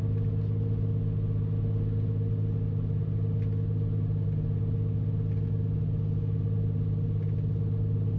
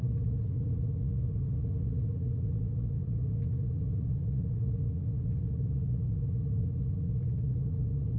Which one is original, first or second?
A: first